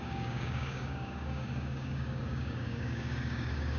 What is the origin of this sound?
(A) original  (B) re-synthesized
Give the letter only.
B